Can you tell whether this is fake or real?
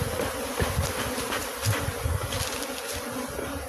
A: real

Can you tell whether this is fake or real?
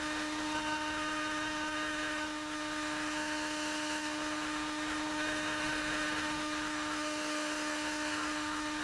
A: fake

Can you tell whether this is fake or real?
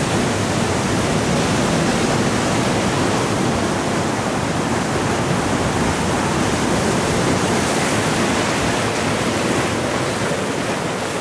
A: real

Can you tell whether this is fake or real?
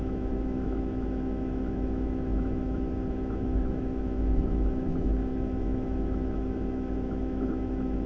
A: fake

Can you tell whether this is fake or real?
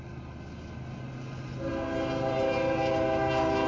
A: real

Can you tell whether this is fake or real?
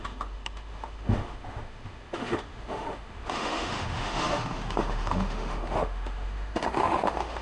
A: fake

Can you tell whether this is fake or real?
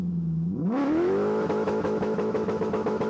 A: fake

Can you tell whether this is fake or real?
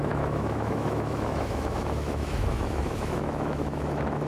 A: fake